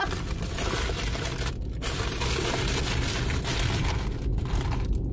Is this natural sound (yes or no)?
yes